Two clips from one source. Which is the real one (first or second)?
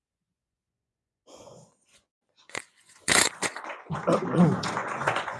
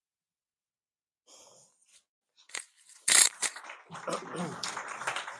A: second